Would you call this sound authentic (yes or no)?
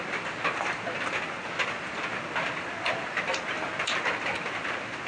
yes